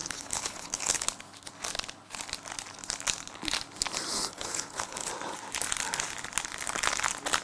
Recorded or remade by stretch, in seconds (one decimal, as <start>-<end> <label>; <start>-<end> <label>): 0.0-1.1 remade; 1.1-4.1 recorded; 4.1-5.1 remade; 5.1-7.4 recorded